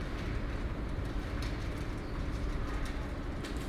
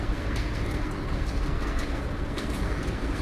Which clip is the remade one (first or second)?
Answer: second